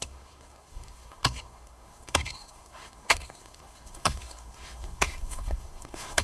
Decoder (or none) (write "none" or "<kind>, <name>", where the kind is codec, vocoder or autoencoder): codec, SNAC